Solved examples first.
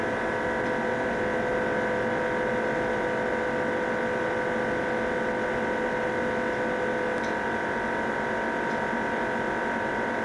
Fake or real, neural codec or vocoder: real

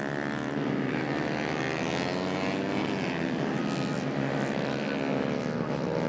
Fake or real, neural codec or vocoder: real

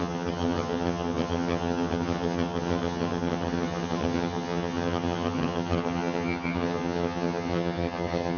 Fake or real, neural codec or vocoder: fake, vocoder, HiFi-GAN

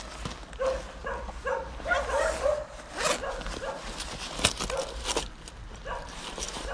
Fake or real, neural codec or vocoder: real